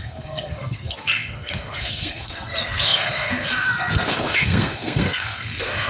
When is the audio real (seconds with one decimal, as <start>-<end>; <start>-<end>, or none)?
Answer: none